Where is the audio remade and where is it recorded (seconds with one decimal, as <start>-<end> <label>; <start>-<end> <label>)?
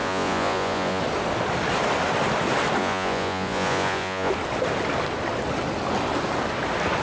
0.0-1.0 remade; 1.0-2.8 recorded; 2.8-4.3 remade; 4.3-7.0 recorded